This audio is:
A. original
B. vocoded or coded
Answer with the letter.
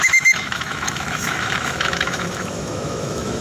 B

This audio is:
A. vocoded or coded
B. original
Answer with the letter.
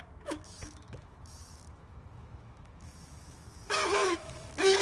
A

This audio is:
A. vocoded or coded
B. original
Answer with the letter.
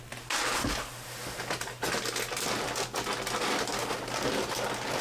B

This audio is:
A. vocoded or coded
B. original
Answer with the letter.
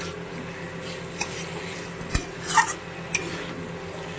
B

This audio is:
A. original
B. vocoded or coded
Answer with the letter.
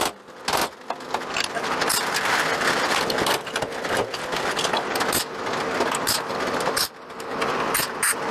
A